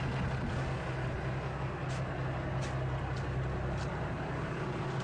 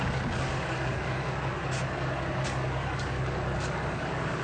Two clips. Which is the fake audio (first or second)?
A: second